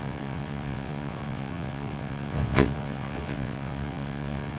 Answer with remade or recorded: remade